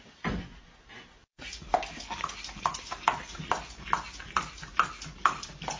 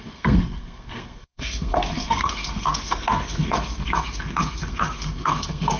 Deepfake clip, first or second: second